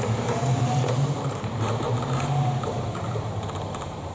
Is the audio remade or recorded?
remade